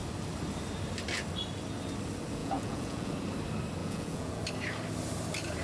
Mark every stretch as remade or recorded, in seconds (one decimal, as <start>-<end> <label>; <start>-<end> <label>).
0.0-2.4 recorded; 2.4-3.1 remade; 3.1-3.8 recorded; 3.8-4.4 remade; 4.4-5.6 recorded